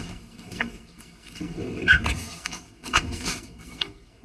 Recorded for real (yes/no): no